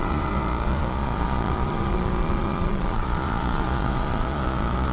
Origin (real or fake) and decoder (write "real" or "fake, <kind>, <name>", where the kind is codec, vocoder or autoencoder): fake, vocoder, Vocos